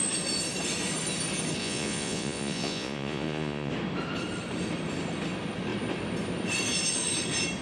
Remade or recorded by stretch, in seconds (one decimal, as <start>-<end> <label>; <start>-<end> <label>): 0.0-1.6 recorded; 1.6-3.7 remade; 3.7-7.6 recorded